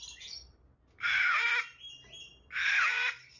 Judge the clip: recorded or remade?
recorded